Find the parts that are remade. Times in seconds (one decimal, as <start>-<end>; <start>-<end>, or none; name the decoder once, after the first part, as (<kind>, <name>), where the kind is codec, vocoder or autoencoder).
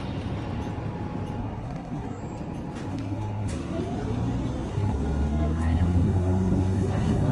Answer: 1.4-2.2 (codec, SNAC); 2.9-3.8; 4.7-7.3